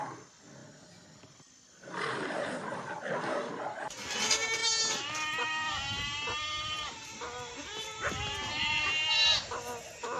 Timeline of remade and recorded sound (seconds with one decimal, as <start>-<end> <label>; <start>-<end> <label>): 0.0-10.2 recorded